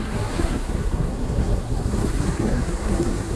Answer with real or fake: fake